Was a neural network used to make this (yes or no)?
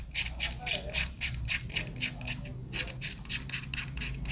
no